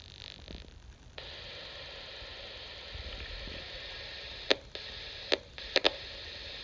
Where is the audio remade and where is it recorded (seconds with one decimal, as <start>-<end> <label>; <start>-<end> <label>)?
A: 0.0-6.6 recorded